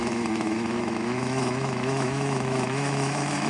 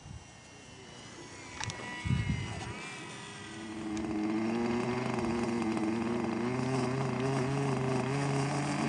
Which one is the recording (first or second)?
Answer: second